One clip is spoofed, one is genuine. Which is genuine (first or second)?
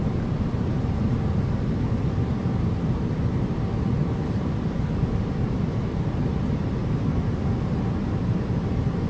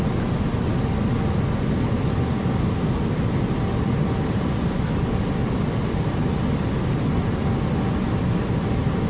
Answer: second